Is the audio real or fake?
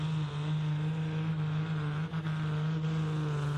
real